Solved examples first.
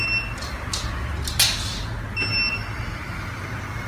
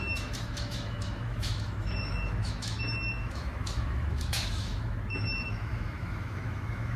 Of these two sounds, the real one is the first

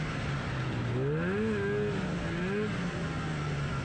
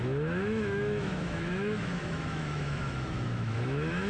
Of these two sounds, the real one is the first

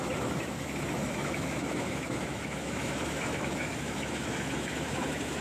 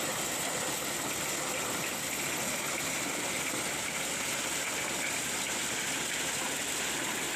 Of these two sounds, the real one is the second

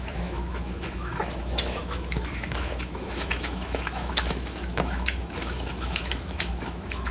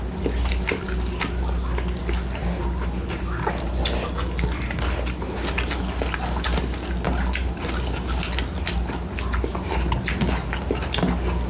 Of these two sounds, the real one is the second